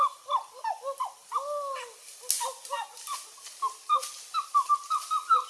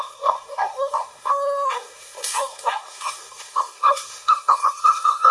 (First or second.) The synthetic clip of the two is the second